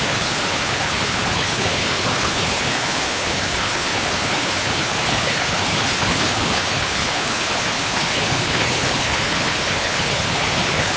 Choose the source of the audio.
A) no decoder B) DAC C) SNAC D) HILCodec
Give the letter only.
D